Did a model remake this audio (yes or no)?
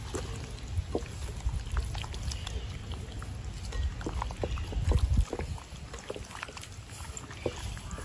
no